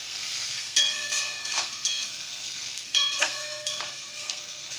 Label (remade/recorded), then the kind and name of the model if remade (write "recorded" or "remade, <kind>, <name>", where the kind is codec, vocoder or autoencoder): remade, codec, SNAC